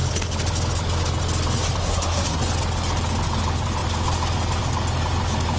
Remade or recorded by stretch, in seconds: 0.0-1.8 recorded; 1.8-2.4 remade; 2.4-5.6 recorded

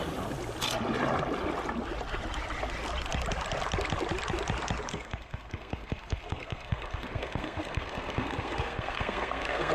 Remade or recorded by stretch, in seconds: 0.0-4.9 recorded; 4.9-9.7 remade

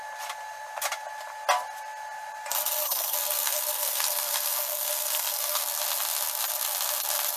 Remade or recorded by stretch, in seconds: 0.0-2.8 recorded; 2.8-5.6 remade; 5.6-7.4 recorded

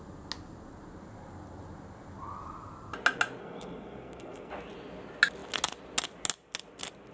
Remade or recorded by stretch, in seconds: 0.0-3.4 recorded; 3.4-4.5 remade; 4.5-7.1 recorded

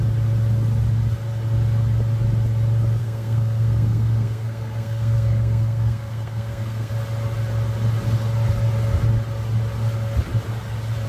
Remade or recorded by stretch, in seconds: 0.0-3.0 recorded; 3.0-6.9 remade; 6.9-11.1 recorded

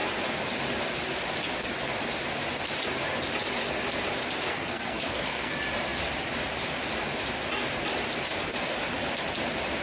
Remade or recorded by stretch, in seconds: 0.0-4.5 recorded; 4.5-5.5 remade; 5.5-9.8 recorded